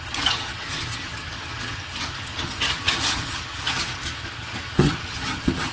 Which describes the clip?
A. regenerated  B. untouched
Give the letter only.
A